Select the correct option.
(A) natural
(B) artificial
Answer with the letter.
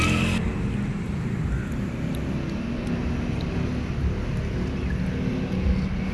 A